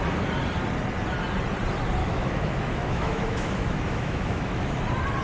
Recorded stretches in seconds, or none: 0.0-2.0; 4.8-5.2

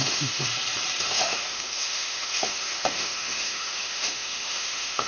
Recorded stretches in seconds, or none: 0.4-1.0

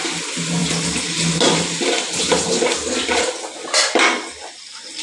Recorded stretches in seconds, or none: 0.0-5.0

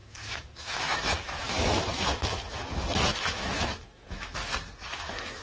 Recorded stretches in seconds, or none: 4.4-4.9

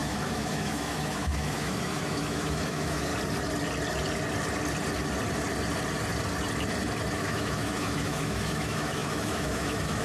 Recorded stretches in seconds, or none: 3.1-7.1

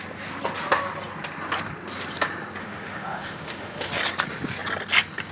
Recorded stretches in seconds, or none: 0.0-2.6; 3.9-5.3

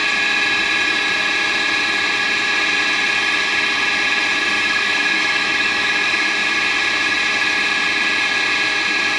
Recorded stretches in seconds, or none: 0.0-4.6; 6.4-9.2